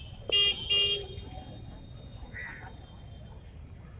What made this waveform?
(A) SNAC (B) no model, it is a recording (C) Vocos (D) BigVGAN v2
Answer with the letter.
B